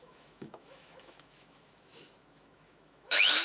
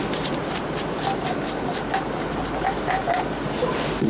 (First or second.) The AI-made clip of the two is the first